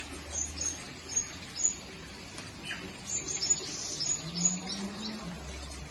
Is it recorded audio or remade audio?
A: recorded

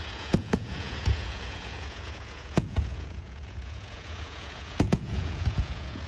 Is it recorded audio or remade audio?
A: remade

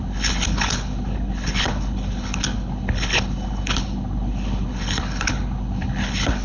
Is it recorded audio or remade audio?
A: remade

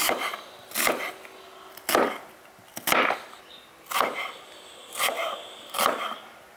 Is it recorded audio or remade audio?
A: recorded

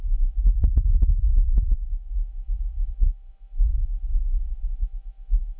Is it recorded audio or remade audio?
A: recorded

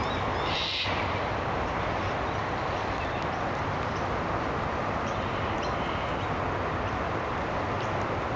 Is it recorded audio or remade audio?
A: recorded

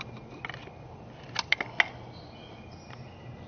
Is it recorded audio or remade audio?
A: recorded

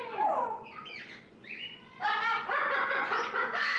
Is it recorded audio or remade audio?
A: remade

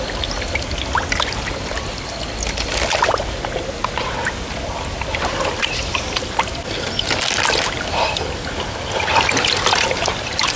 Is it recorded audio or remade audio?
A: recorded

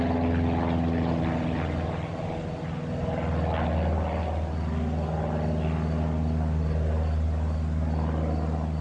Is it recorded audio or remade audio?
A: recorded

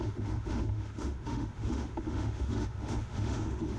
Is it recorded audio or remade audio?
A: remade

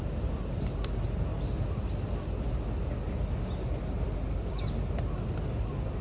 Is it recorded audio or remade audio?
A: recorded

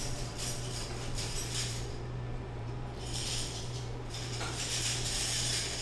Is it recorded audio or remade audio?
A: remade